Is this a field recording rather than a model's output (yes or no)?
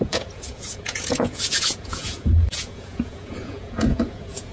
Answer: no